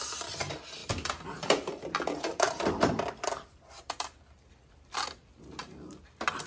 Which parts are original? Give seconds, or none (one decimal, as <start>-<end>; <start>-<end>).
0.0-0.8; 4.7-6.5